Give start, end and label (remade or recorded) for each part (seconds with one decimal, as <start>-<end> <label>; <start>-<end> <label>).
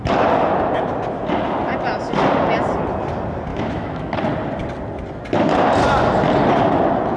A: 0.0-3.5 recorded; 3.5-4.1 remade; 4.1-7.2 recorded